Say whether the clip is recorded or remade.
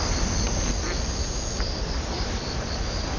recorded